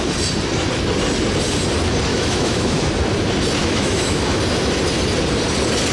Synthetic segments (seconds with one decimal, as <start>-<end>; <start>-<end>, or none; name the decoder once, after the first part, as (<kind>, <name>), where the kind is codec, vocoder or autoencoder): 2.1-2.8 (autoencoder, DAC-VAE); 3.6-4.4